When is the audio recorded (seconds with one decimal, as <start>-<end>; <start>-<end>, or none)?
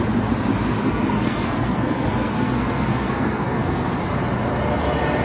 0.0-0.8; 3.9-5.2